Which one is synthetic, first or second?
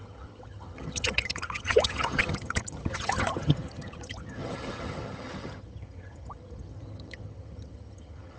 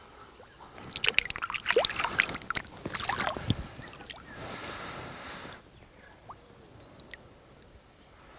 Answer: first